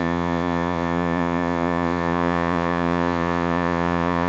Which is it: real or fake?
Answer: fake